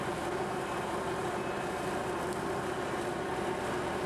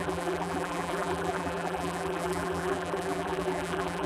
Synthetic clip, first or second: second